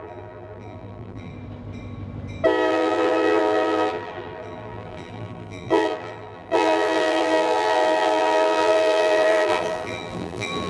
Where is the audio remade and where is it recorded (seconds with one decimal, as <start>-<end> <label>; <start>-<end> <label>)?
0.0-1.3 remade; 1.3-2.7 recorded; 2.7-10.7 remade